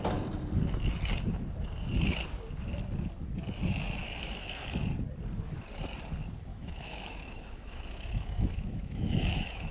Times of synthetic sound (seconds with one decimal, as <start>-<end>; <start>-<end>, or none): 4.0-4.6; 6.5-9.7